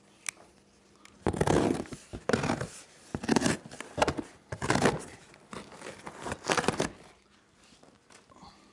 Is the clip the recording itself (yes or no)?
yes